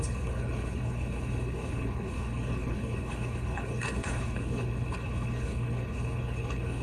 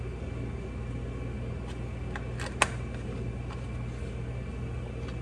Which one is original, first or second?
second